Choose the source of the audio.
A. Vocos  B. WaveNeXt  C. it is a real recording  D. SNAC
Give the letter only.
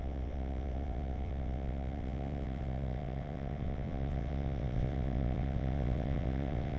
B